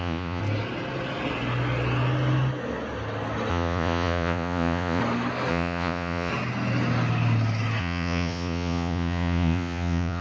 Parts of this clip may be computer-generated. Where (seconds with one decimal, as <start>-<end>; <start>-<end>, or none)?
0.0-0.4; 3.5-5.0; 5.5-6.3; 7.8-10.2